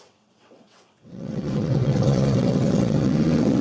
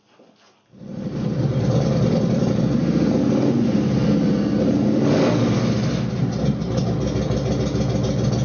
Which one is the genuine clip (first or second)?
second